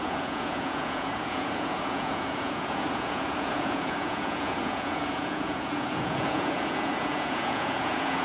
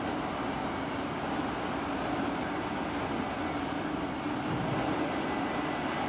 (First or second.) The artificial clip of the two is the first